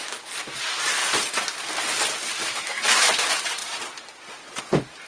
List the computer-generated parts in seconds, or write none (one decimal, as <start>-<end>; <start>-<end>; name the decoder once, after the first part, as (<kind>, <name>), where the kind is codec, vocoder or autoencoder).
2.4-3.1 (autoencoder, DAC-VAE)